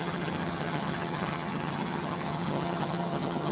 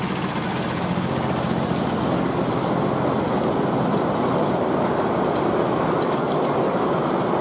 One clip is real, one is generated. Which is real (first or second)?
second